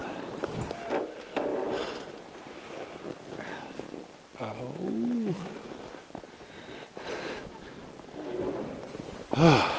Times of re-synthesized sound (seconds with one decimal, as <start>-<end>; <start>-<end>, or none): none